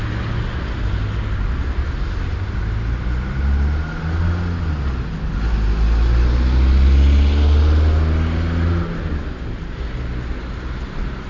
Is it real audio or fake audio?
real